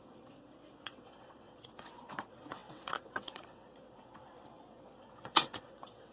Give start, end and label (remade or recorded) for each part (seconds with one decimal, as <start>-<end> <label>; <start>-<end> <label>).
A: 0.0-6.1 remade